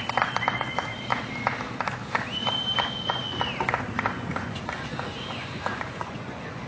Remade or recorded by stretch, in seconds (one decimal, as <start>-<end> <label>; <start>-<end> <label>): 0.0-0.9 remade; 0.9-4.1 recorded; 4.1-6.7 remade